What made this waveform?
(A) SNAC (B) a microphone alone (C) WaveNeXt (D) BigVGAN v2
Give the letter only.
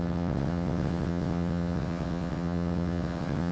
C